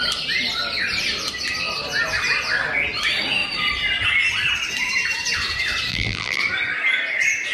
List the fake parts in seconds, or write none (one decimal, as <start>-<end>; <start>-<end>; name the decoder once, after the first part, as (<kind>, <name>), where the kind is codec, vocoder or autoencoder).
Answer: 5.9-6.4 (vocoder, BigVGAN v2)